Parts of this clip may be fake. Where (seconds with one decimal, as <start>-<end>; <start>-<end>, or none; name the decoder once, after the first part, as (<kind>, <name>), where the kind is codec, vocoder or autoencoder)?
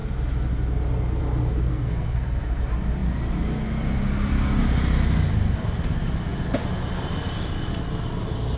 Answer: 1.7-2.6 (codec, SNAC)